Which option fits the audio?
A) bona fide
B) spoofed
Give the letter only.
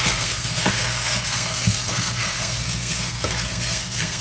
B